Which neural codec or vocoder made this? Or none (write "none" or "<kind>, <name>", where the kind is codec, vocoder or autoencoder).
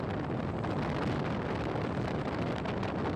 none